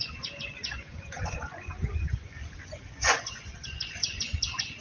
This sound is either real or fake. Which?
fake